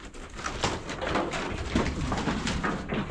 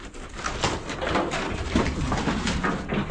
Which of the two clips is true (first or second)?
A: second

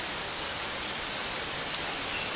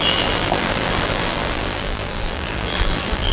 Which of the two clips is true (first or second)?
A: first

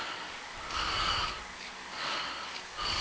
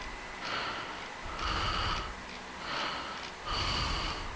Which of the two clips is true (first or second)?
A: second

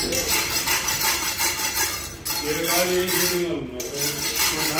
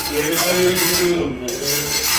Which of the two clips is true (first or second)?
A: first